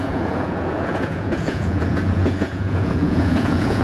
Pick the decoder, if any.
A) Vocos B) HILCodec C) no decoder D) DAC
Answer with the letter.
A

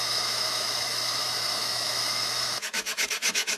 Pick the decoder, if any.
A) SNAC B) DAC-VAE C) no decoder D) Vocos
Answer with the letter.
B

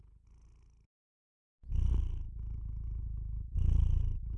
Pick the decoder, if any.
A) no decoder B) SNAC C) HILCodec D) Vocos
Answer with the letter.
A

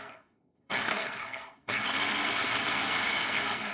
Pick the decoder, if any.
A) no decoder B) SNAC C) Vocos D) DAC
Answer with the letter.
B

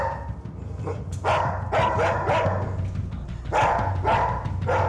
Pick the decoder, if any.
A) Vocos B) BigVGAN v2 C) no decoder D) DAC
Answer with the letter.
C